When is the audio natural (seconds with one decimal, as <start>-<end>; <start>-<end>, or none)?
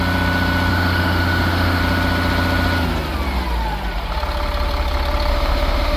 0.0-0.7; 1.8-5.3